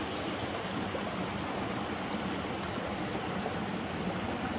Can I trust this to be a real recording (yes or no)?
yes